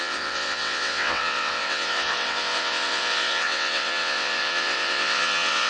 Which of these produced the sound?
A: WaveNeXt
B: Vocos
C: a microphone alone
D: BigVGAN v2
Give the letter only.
A